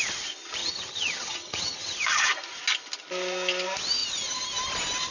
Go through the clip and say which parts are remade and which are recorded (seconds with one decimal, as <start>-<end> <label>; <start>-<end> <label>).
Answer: 0.0-0.6 recorded; 0.6-2.0 remade; 2.0-5.1 recorded